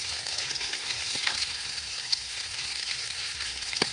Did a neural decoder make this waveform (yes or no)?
yes